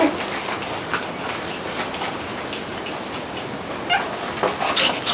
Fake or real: real